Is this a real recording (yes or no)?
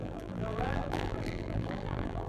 no